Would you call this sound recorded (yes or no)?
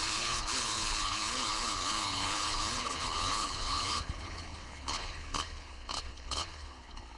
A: no